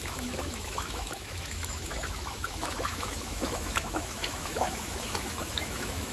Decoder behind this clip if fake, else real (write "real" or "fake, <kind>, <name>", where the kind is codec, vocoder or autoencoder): fake, autoencoder, DAC-VAE